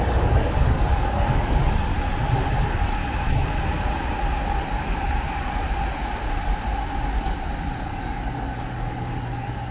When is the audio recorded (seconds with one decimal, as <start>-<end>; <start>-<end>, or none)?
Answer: 1.9-2.6; 3.0-7.8